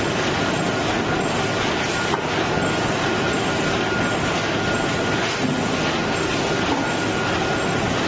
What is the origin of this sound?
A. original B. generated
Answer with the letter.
A